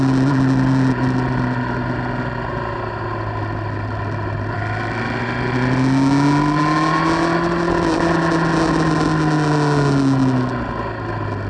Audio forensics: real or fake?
real